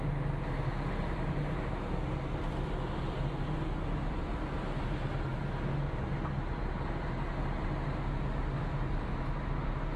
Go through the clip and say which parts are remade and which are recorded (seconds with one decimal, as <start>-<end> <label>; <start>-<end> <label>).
0.0-10.0 recorded